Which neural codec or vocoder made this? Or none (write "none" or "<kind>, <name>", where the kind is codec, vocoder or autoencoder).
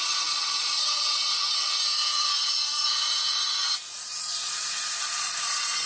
vocoder, Vocos